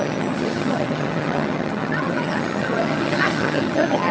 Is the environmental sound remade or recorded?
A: remade